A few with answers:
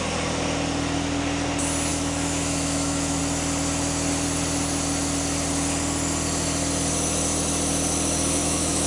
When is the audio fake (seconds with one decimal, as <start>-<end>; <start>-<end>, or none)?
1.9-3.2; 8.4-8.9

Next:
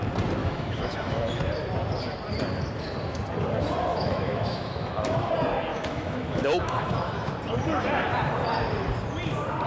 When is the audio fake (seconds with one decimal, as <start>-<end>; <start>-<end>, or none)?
0.4-1.4; 3.9-5.3; 5.7-7.3

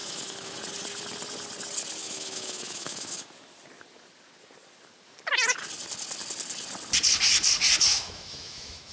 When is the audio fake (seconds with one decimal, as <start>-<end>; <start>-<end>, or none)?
0.0-0.6; 2.0-3.3; 7.9-8.9

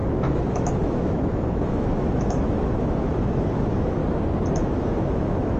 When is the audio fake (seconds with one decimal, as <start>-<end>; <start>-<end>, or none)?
0.0-4.0; 4.6-5.6